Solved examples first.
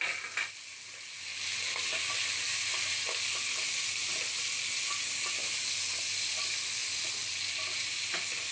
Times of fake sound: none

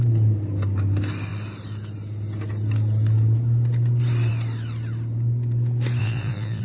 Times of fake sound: 6.0-6.6 (vocoder, Vocos)

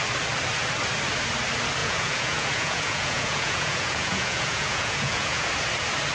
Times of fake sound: 1.8-5.5 (vocoder, Vocos)

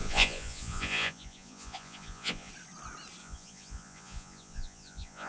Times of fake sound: 0.0-2.5 (vocoder, Vocos); 3.2-5.3

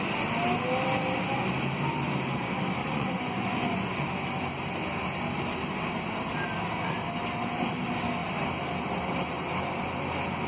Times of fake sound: 2.8-4.0 (vocoder, Vocos)